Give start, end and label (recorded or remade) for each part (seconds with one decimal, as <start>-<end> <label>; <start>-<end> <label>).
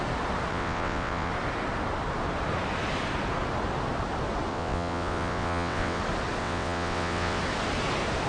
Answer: 0.0-0.5 recorded; 0.5-1.3 remade; 1.3-4.5 recorded; 4.5-6.0 remade; 6.0-6.4 recorded; 6.4-7.4 remade; 7.4-8.3 recorded